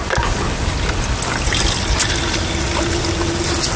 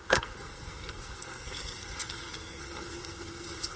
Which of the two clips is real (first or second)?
first